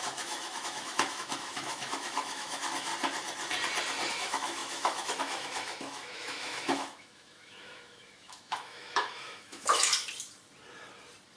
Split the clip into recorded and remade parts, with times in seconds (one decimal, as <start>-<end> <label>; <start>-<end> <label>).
0.0-2.9 remade; 2.9-4.1 recorded; 4.1-9.9 remade; 9.9-11.4 recorded